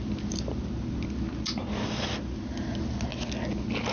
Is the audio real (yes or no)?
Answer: yes